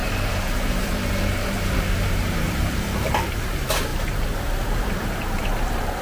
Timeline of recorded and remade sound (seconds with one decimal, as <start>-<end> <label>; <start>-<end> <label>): 0.0-3.9 remade; 3.9-4.5 recorded; 4.5-6.0 remade